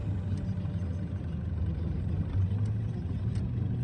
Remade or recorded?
recorded